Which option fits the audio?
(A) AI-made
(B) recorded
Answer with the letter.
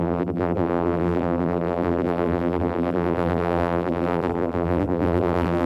A